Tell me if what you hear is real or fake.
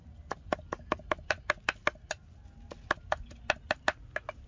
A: real